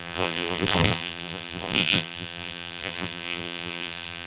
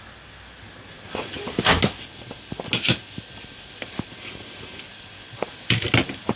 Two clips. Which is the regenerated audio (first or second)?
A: first